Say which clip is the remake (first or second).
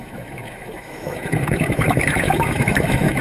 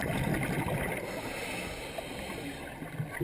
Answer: first